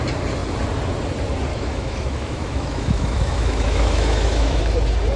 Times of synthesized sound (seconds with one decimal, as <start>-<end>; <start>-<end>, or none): 1.5-4.6